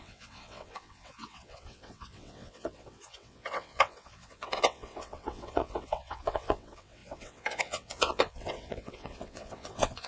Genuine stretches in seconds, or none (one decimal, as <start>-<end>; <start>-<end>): none